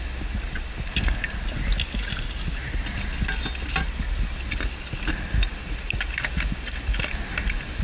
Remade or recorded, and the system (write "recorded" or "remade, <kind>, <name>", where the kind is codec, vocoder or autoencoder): recorded